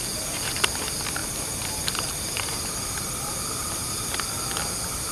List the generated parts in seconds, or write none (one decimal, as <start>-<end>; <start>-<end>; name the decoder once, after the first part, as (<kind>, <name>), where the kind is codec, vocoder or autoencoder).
1.2-3.3 (vocoder, BigVGAN v2)